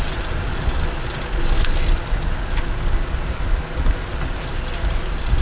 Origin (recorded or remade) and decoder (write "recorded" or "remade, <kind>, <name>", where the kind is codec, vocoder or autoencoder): recorded